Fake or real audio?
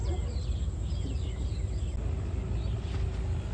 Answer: real